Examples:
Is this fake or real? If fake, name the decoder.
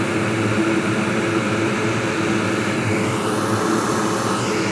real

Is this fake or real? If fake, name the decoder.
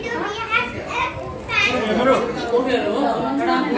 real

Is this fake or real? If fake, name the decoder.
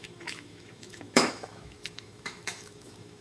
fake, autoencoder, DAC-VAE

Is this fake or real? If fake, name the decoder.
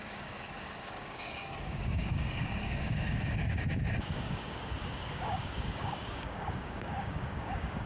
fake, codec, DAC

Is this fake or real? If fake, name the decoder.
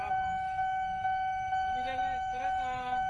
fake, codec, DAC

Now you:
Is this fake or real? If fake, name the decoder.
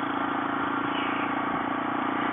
real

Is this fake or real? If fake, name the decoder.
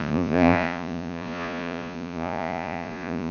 fake, vocoder, Vocos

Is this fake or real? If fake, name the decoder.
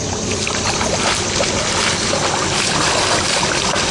real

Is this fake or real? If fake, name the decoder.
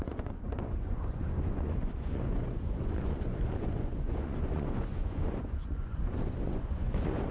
fake, vocoder, Vocos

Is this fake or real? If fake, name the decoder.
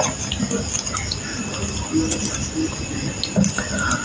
real